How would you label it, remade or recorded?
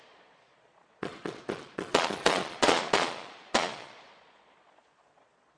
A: remade